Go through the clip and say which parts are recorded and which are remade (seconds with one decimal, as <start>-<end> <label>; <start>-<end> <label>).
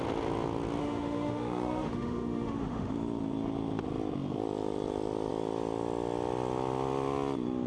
0.0-0.8 recorded; 0.8-2.9 remade; 2.9-7.7 recorded